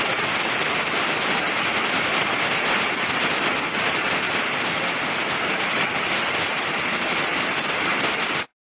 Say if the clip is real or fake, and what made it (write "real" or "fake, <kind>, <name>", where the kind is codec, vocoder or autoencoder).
real